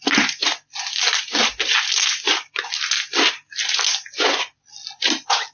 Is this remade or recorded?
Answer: recorded